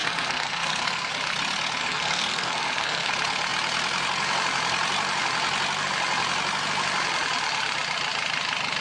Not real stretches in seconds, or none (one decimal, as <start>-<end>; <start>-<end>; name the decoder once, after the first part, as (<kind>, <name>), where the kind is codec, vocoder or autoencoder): 0.0-1.1 (codec, SNAC); 1.8-3.1